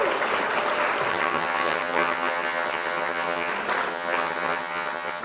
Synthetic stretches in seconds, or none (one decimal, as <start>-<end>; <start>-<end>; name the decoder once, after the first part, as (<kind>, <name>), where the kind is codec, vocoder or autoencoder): 1.1-3.5 (vocoder, HiFi-GAN); 3.9-5.2